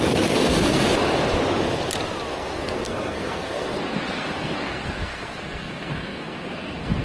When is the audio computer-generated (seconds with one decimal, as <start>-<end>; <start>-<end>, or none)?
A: 0.0-0.9; 2.3-7.0